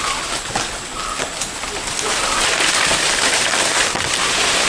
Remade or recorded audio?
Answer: recorded